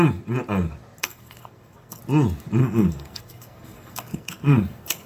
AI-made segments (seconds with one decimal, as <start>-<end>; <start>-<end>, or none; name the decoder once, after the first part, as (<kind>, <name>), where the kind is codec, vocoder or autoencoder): 1.0-2.0 (codec, SNAC); 2.6-5.1